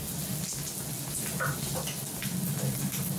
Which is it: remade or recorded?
recorded